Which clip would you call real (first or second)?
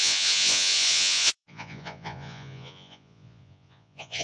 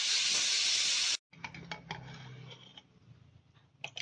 second